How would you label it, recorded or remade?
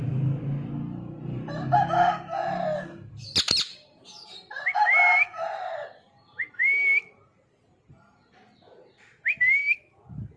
recorded